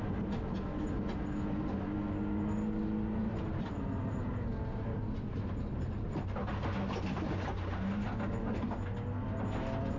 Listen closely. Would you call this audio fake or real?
real